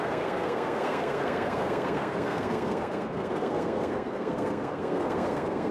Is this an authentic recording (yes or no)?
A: no